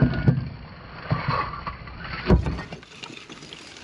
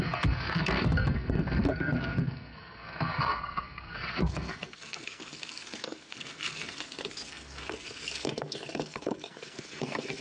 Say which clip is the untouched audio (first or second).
first